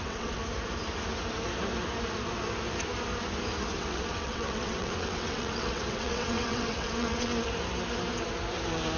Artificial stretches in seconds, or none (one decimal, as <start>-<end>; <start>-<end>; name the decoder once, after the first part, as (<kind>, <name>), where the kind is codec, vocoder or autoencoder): 0.0-0.4 (vocoder, WaveNeXt); 3.8-7.3